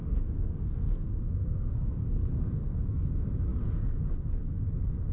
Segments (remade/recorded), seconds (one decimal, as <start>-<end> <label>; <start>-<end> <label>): 0.0-3.1 remade; 3.1-5.1 recorded